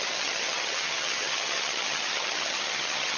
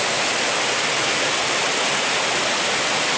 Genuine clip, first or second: second